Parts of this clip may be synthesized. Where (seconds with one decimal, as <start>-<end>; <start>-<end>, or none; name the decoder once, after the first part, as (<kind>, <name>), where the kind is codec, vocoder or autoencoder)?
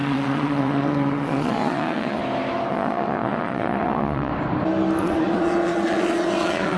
0.0-2.2 (vocoder, Vocos); 2.7-4.3; 5.0-6.8